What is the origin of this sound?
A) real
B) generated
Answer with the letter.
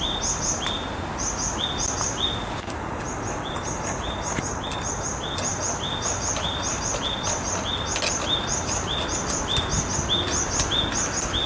A